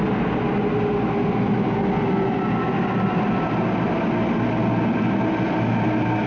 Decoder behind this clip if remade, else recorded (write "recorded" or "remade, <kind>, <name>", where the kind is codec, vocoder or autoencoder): recorded